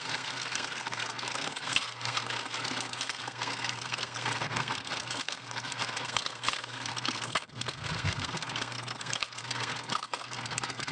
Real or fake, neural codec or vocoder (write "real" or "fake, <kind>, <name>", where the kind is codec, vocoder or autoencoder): fake, codec, SNAC